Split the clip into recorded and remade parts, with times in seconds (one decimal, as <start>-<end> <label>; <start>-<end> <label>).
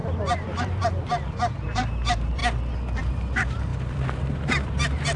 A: 0.0-2.4 remade; 2.4-3.0 recorded; 3.0-5.2 remade